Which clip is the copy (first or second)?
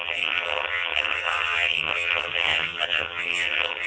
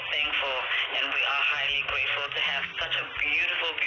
first